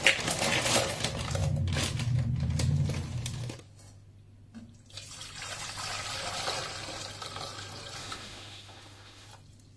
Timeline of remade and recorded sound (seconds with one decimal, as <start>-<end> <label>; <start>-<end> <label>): 0.0-8.0 recorded; 8.0-9.3 remade; 9.3-9.8 recorded